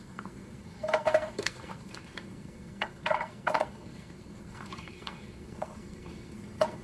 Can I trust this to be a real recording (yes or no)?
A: no